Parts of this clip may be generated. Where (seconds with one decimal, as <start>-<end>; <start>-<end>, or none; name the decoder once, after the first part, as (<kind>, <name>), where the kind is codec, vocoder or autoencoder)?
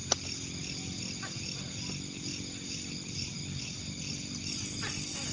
none